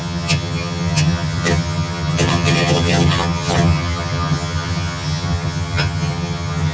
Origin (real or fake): fake